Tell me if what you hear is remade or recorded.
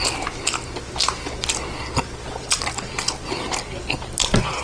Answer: recorded